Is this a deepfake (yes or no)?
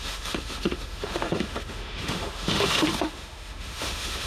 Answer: yes